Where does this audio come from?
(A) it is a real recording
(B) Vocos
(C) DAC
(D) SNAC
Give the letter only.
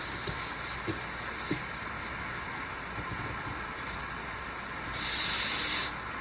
A